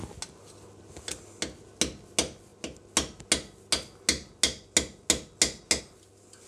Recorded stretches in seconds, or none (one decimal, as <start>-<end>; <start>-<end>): 0.0-6.5